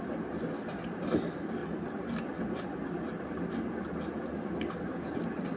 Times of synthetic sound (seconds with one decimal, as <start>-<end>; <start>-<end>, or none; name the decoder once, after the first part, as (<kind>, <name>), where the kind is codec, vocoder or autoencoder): none

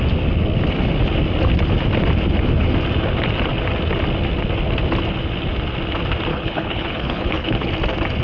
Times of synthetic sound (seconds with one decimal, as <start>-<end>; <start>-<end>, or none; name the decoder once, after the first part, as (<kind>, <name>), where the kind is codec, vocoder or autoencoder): 6.3-7.7 (codec, HILCodec)

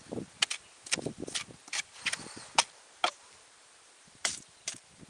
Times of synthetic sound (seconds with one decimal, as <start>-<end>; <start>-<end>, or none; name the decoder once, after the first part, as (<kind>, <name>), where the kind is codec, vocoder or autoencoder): none